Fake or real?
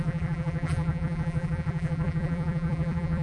fake